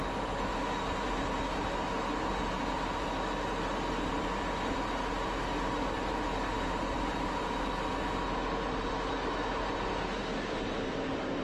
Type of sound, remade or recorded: recorded